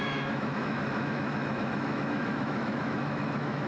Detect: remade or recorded remade